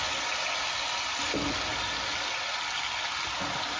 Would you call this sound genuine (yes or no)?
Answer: yes